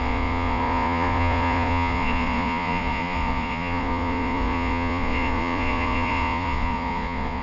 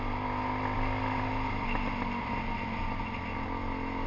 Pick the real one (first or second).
second